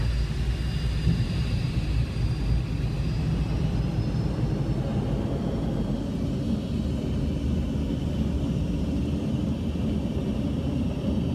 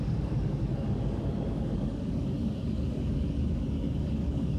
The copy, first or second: second